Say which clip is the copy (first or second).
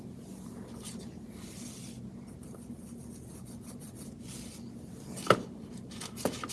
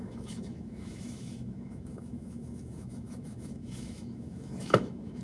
second